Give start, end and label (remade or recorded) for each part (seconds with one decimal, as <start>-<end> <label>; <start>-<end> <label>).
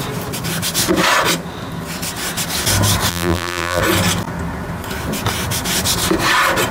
0.0-3.1 recorded; 3.1-3.8 remade; 3.8-6.7 recorded